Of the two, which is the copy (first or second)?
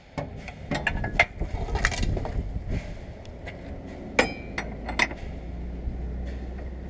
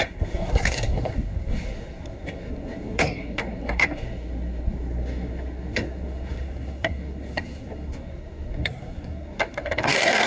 second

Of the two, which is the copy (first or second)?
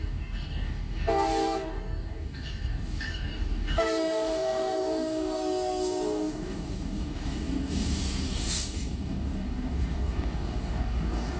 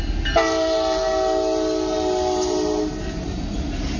first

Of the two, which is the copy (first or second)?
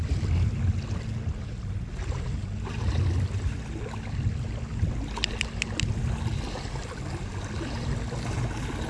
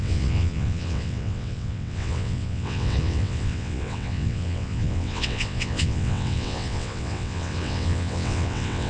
second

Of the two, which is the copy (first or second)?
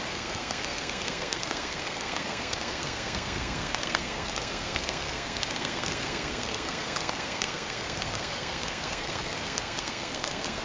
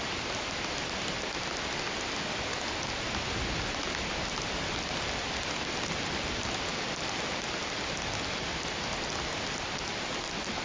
first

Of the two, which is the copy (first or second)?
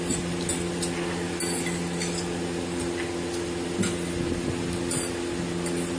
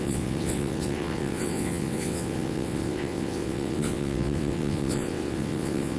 second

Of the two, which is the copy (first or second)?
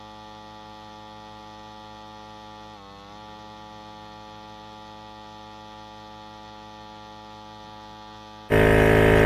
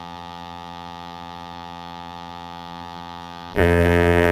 second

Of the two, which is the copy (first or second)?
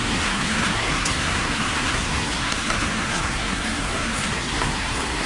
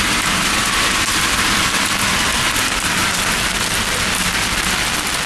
first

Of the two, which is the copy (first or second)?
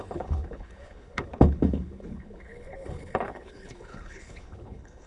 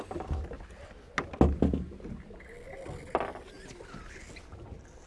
first